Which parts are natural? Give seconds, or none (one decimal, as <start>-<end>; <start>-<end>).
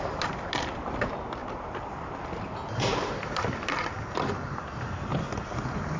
0.0-1.4; 2.1-5.1